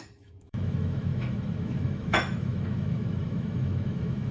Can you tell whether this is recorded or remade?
remade